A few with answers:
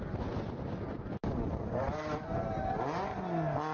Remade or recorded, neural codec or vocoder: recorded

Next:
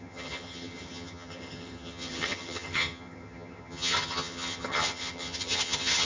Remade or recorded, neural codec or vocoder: remade, vocoder, HiFi-GAN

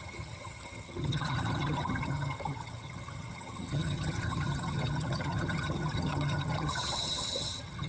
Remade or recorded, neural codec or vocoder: remade, vocoder, HiFi-GAN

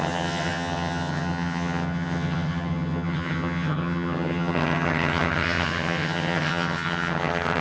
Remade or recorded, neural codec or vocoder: remade, vocoder, HiFi-GAN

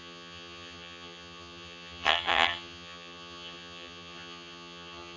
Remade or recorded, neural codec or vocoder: remade, vocoder, HiFi-GAN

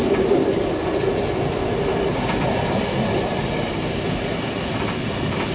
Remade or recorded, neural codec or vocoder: recorded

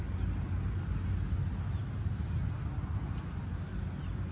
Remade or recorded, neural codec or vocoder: recorded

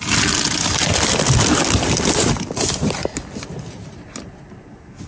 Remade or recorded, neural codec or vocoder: recorded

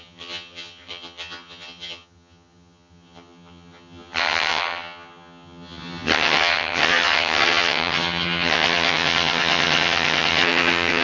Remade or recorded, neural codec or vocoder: remade, vocoder, HiFi-GAN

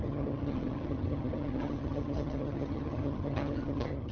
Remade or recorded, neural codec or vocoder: remade, vocoder, HiFi-GAN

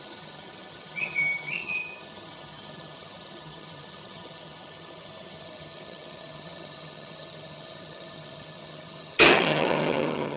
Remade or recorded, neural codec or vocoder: remade, vocoder, HiFi-GAN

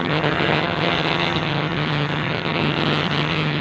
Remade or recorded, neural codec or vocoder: remade, vocoder, HiFi-GAN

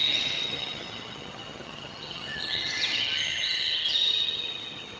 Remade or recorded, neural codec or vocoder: remade, vocoder, HiFi-GAN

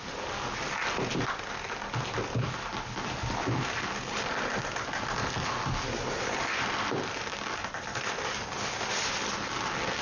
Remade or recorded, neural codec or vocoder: recorded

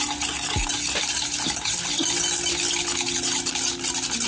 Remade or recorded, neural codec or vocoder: recorded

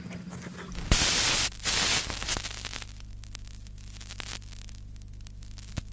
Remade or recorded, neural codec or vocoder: recorded